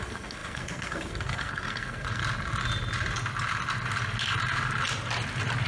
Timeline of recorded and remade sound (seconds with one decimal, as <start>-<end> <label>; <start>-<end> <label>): 0.0-2.2 remade; 2.2-5.7 recorded